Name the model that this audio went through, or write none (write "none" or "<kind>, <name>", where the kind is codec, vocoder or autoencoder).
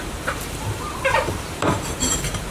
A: vocoder, BigVGAN v2